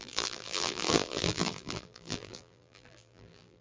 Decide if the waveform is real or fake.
fake